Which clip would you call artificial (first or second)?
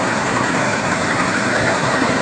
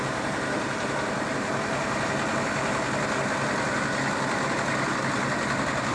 first